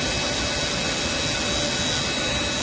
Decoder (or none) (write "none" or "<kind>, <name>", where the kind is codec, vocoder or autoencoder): none